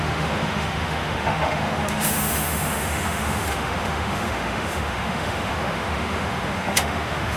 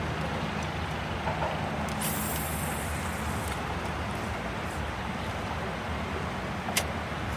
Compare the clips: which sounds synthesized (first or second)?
first